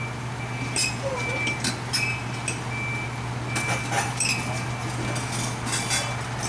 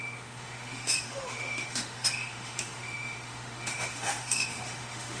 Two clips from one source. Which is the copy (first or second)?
second